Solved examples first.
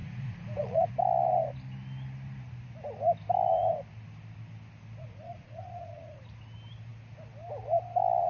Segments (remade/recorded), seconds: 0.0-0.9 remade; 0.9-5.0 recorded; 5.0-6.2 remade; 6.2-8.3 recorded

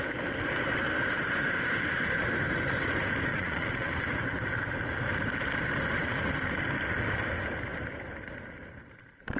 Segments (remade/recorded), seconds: 0.0-3.3 recorded; 3.3-3.9 remade; 3.9-9.4 recorded